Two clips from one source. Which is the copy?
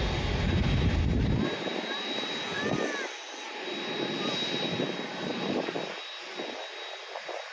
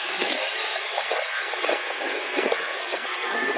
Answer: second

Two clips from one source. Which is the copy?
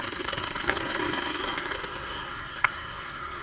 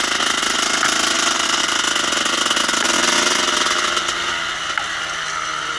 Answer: first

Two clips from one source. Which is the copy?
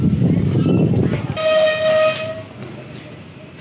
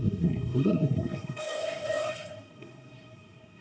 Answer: second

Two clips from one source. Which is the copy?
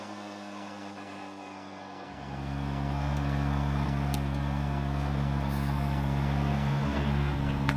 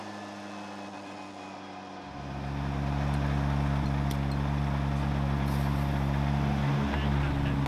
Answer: first